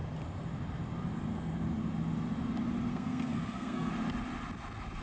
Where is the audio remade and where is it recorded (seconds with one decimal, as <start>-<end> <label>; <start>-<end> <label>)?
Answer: 0.0-2.9 recorded; 2.9-3.9 remade; 3.9-5.0 recorded